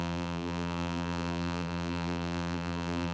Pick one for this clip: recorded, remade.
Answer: remade